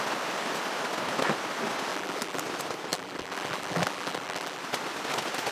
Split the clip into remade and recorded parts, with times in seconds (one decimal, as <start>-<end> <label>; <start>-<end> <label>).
0.0-1.9 recorded; 1.9-2.4 remade; 2.4-2.9 recorded; 2.9-4.6 remade; 4.6-5.5 recorded